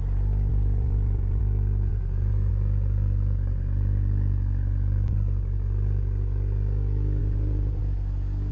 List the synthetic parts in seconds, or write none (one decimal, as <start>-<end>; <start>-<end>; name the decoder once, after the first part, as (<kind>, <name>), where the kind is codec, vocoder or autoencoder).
0.5-1.4 (vocoder, Vocos); 1.9-2.5; 7.2-7.8